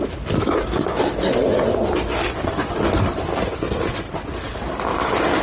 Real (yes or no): yes